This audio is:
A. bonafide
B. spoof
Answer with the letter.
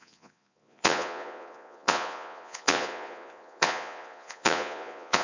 B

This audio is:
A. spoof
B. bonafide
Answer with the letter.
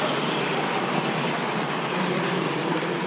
B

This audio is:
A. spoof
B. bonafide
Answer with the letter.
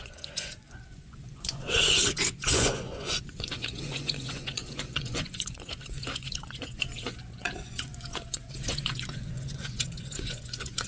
A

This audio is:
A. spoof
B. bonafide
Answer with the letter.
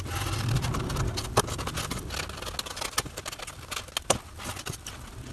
B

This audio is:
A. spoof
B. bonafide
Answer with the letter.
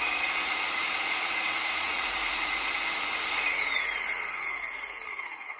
A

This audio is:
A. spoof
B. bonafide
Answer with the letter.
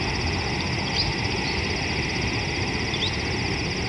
B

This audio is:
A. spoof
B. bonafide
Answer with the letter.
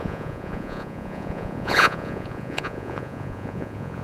A